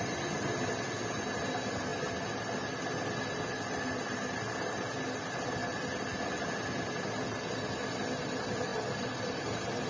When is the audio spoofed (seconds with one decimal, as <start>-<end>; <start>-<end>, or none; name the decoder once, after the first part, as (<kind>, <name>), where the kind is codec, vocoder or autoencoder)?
8.7-9.4 (vocoder, BigVGAN v2)